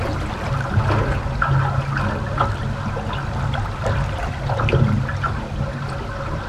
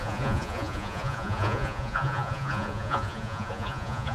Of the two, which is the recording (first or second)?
first